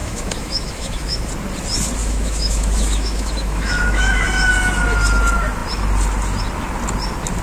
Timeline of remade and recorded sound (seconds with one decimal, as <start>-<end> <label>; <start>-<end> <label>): 0.0-1.3 remade; 1.3-2.0 recorded; 2.0-4.2 remade; 4.2-7.4 recorded